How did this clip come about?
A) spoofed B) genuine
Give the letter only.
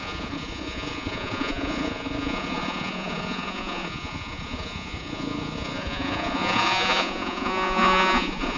A